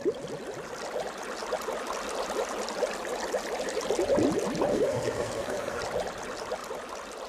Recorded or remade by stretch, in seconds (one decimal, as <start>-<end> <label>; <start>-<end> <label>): 0.0-4.7 recorded; 4.7-5.8 remade; 5.8-7.3 recorded